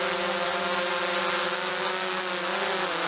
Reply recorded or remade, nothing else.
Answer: recorded